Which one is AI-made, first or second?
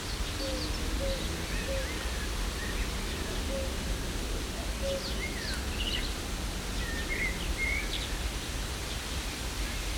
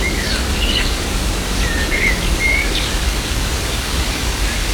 second